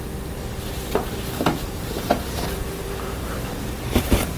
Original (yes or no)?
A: no